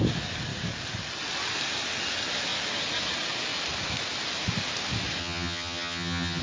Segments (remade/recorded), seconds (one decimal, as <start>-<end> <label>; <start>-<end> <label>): 0.0-5.2 recorded; 5.2-6.4 remade